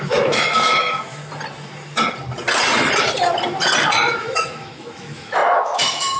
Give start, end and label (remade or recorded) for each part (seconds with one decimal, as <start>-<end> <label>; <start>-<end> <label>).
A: 0.0-1.2 remade; 1.2-4.2 recorded; 4.2-6.2 remade